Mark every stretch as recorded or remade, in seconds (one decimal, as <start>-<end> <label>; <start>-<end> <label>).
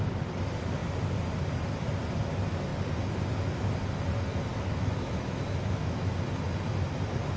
0.0-4.5 recorded; 4.5-6.1 remade; 6.1-7.4 recorded